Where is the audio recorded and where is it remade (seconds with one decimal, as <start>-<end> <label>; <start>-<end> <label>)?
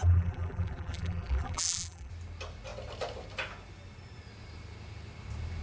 0.0-2.1 remade; 2.1-5.6 recorded